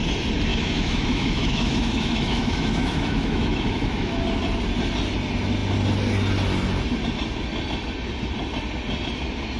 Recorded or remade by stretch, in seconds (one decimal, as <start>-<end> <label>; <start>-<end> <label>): 0.0-0.5 recorded; 0.5-4.2 remade; 4.2-9.6 recorded